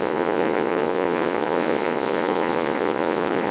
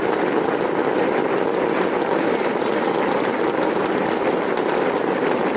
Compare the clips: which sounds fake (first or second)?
first